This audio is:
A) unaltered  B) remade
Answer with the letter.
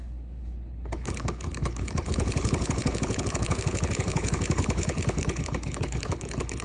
B